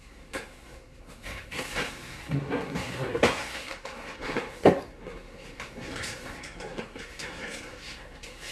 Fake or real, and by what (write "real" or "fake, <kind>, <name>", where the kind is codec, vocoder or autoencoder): fake, codec, SNAC